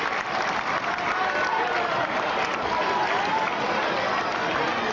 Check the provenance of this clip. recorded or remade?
recorded